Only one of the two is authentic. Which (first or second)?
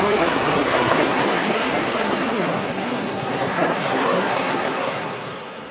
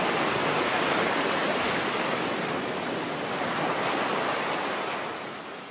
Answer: second